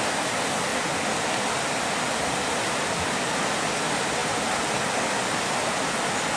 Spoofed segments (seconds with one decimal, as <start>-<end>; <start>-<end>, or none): none